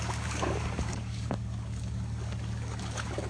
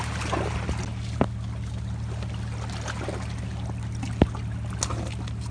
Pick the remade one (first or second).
first